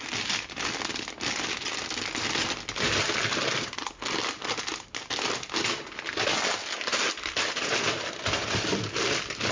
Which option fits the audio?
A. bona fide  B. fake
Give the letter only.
A